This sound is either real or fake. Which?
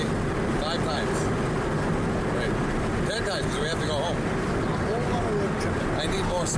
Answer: real